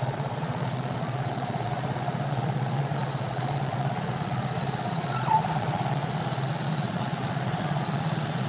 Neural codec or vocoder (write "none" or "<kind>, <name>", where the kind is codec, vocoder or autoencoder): vocoder, Vocos